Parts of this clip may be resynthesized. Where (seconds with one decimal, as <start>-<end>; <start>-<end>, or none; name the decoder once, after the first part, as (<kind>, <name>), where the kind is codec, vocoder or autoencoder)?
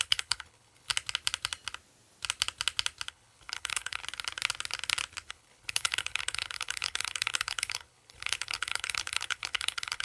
0.0-0.9 (codec, HILCodec); 3.1-4.0; 5.3-10.0